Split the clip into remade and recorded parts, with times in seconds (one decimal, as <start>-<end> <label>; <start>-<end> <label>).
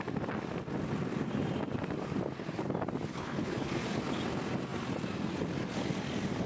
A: 0.0-3.1 recorded; 3.1-3.7 remade; 3.7-6.5 recorded